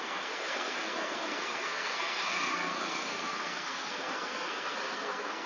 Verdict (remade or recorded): remade